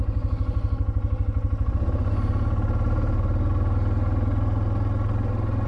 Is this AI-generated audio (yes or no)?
no